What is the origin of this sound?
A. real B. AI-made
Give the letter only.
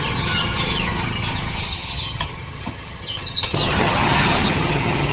B